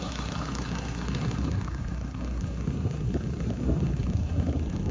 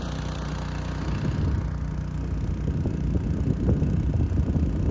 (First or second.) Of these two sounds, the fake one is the first